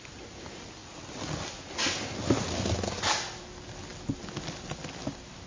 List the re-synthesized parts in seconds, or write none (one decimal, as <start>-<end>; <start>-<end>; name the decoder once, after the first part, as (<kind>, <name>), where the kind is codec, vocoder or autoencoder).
none